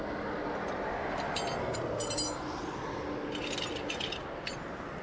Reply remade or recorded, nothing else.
recorded